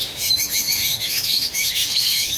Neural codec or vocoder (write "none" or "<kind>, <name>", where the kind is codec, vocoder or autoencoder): autoencoder, DAC-VAE